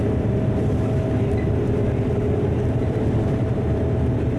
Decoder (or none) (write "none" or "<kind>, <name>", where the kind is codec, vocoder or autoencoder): none